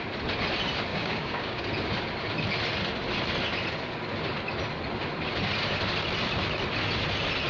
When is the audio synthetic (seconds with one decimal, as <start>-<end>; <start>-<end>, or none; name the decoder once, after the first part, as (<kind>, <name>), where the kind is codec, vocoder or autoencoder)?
0.9-1.6 (codec, DAC)